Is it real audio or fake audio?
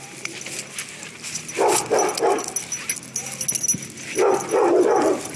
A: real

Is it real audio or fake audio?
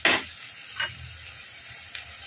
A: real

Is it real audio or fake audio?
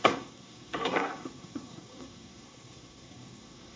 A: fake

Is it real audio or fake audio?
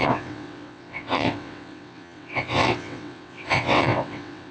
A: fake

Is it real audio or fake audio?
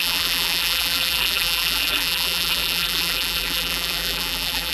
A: fake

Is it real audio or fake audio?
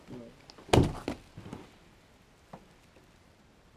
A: real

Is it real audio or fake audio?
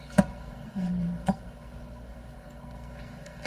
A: fake